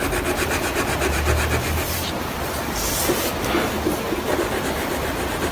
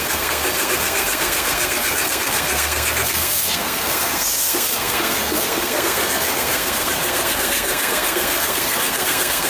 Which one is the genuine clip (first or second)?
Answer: first